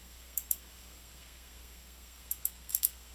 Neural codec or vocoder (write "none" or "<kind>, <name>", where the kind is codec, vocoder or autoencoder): codec, SNAC